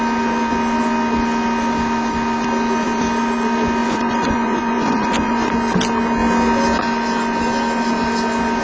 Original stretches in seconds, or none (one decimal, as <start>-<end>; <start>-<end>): 0.0-3.8; 5.5-8.6

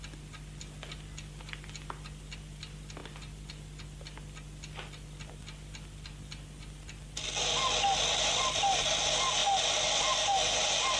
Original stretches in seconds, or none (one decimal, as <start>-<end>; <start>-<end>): 0.0-11.0